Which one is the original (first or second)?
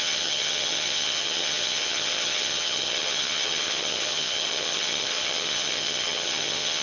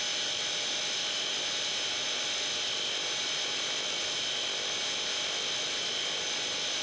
second